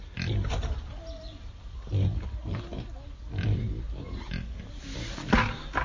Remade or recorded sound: recorded